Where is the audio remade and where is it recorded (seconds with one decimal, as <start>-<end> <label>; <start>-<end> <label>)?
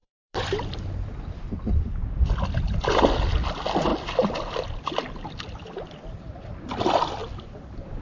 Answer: 0.0-1.5 remade; 1.5-7.2 recorded; 7.2-8.0 remade